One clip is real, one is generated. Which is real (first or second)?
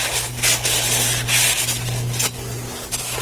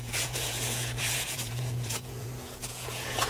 first